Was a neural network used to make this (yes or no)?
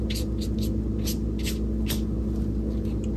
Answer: no